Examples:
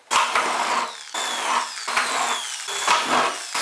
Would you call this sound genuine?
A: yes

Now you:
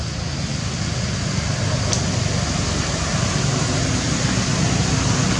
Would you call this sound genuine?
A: yes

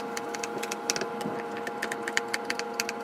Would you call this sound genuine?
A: yes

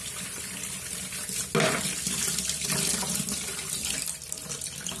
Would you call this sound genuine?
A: yes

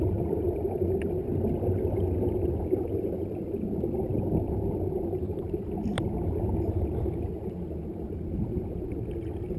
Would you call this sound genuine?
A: yes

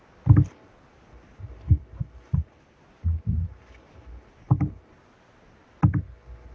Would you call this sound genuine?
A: yes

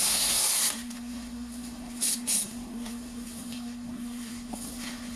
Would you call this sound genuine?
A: no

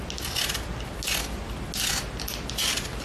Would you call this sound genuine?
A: yes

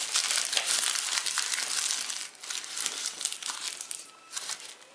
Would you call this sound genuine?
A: yes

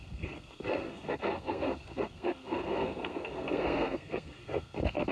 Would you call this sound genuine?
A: no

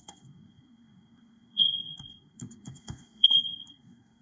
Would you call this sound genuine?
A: no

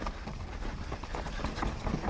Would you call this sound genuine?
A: yes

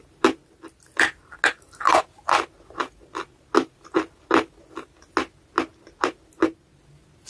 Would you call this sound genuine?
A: yes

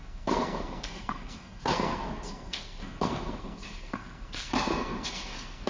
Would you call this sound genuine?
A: no